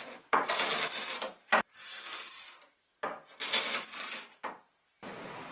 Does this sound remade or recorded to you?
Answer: recorded